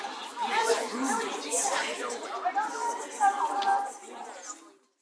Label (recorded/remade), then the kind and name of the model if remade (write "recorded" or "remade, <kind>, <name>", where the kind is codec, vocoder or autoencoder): recorded